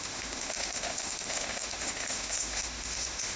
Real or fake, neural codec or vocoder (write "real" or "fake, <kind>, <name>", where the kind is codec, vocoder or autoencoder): fake, autoencoder, DAC-VAE